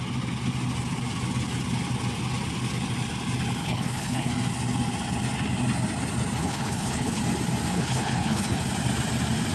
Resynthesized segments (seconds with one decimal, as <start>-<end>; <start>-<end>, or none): 3.6-4.3; 6.4-7.2; 7.7-8.6